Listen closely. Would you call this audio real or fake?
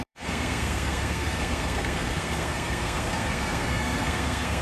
fake